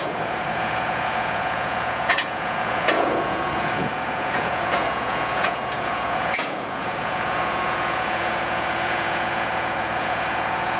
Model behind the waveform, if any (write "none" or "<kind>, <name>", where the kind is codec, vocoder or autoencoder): vocoder, Vocos